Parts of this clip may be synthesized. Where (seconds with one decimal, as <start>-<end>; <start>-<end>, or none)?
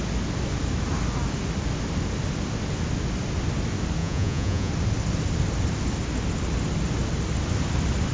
4.0-4.7